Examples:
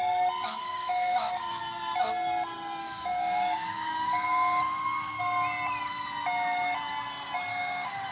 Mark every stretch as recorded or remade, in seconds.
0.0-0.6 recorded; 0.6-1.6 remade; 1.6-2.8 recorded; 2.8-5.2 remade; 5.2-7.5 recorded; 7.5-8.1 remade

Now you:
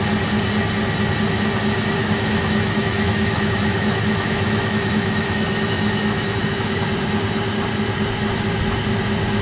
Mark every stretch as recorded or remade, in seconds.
0.0-2.0 recorded; 2.0-6.9 remade; 6.9-9.4 recorded

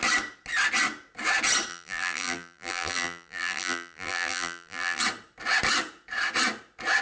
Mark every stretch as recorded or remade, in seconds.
0.0-1.7 recorded; 1.7-5.0 remade; 5.0-7.0 recorded